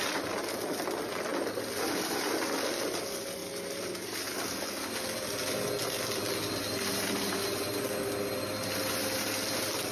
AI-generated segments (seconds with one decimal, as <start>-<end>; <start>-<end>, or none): none